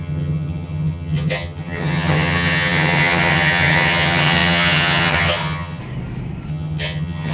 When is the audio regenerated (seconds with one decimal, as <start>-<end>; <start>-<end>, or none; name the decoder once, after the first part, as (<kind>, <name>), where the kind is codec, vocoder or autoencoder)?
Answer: 0.0-5.8 (vocoder, HiFi-GAN); 6.5-7.3